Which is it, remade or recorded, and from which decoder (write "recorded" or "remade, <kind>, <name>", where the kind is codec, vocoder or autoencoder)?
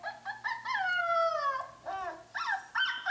recorded